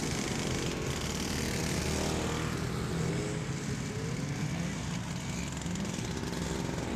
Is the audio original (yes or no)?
yes